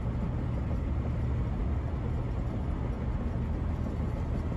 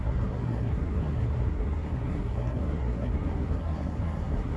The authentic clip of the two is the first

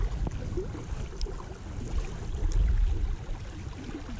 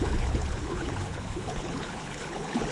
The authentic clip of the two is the first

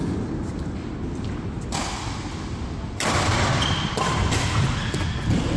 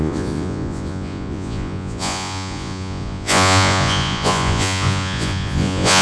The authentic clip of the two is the first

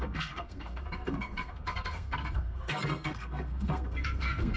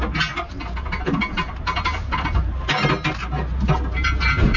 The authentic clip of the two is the second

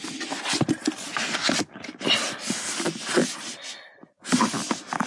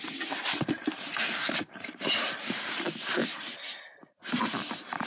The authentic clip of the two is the first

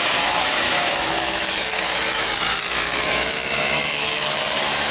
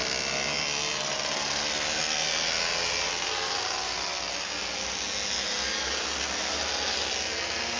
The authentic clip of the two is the second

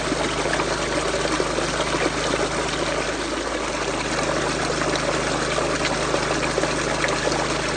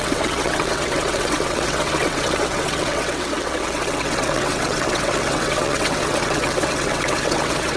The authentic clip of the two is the first